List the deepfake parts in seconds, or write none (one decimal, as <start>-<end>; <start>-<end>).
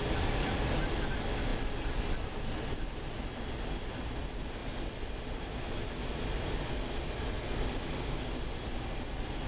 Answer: none